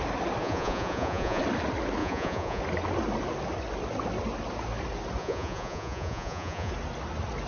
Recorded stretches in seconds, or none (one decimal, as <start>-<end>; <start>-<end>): 0.0-0.4; 1.4-2.0; 2.6-5.2; 6.7-7.5